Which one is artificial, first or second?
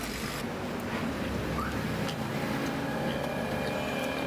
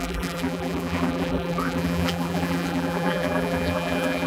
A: second